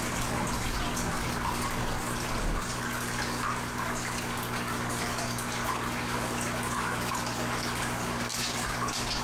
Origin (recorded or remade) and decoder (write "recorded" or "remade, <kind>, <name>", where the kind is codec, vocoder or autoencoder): remade, codec, DAC